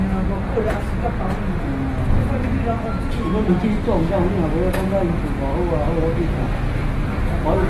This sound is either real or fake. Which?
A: real